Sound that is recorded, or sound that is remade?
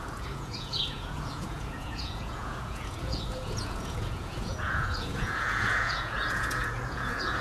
remade